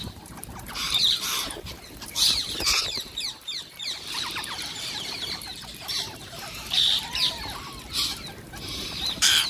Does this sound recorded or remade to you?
remade